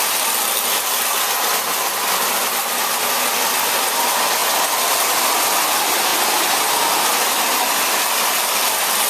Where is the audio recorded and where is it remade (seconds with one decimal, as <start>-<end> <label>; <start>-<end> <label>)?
0.0-9.1 recorded